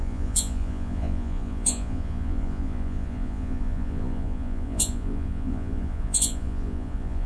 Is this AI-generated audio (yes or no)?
yes